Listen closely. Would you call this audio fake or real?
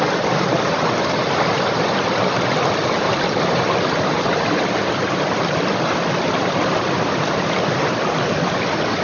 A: real